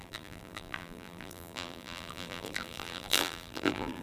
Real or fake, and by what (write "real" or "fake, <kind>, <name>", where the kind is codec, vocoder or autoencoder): fake, vocoder, BigVGAN v2